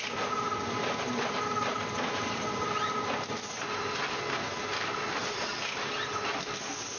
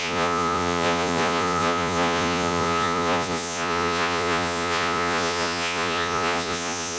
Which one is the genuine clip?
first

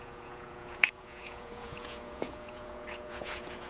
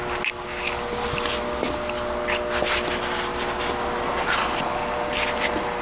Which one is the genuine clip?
second